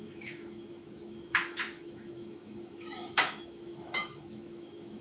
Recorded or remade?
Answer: remade